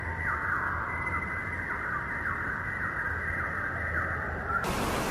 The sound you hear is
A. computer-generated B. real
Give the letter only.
B